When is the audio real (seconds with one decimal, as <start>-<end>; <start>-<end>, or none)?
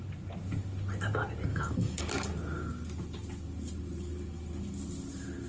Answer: 0.0-1.5; 2.0-5.5